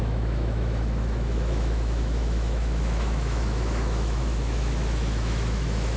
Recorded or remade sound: remade